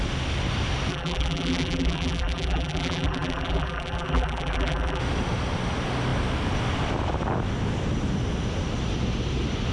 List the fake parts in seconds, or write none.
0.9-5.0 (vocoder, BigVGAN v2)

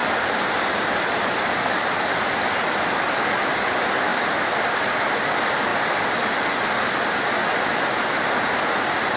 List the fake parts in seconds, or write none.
0.0-3.2 (vocoder, BigVGAN v2); 4.1-4.8